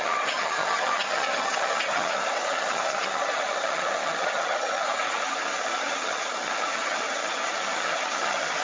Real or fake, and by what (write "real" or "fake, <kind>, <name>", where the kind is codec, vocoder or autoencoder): fake, vocoder, HiFi-GAN